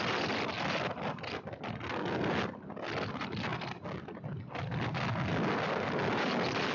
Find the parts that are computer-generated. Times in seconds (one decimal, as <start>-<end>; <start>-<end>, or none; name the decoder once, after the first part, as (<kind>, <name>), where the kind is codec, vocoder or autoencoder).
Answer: none